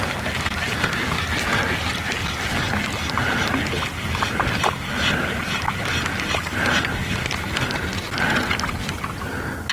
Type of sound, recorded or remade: recorded